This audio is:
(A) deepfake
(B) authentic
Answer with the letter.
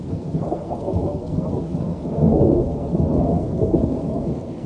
A